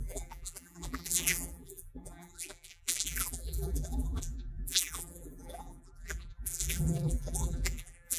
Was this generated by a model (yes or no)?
yes